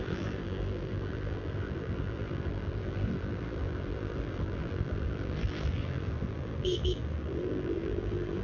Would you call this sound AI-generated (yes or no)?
yes